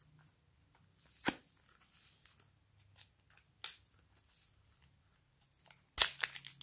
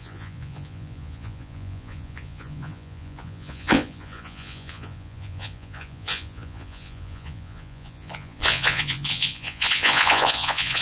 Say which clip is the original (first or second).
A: first